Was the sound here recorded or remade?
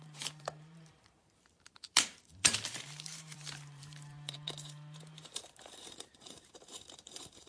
remade